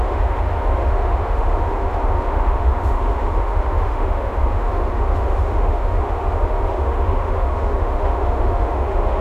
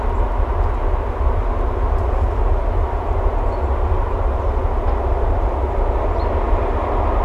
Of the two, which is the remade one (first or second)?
first